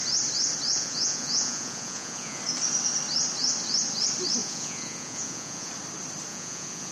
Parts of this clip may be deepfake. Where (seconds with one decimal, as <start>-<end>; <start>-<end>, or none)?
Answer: 0.7-2.4; 4.4-5.7; 6.3-6.9